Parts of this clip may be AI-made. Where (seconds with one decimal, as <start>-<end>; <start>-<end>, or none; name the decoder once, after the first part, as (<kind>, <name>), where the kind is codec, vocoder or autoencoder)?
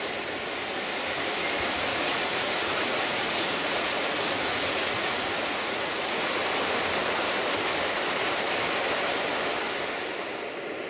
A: 1.9-6.3 (vocoder, Vocos)